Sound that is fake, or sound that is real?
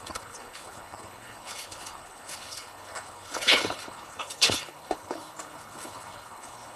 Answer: fake